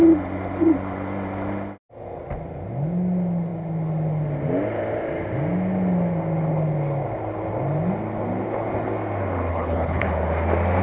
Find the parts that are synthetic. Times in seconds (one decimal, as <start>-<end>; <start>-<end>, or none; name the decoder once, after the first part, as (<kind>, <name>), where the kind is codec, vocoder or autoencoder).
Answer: 9.5-10.1 (codec, HILCodec)